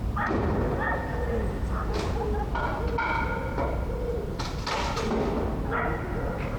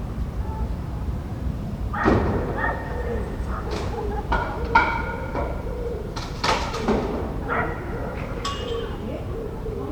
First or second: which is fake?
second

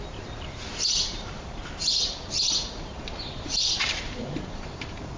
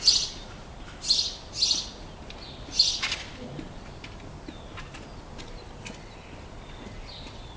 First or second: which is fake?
first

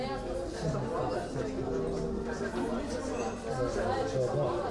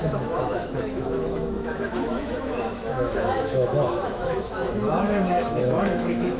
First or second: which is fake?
second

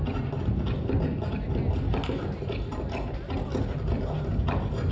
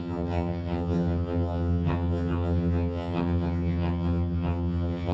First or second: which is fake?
second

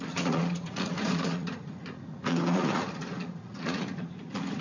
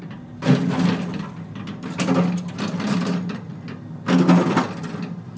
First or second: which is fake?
first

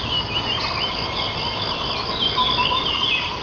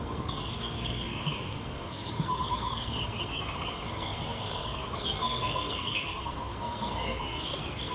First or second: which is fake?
second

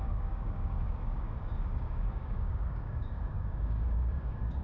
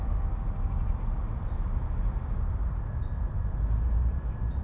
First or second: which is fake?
first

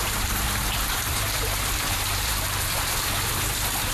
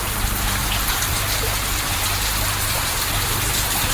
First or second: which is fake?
first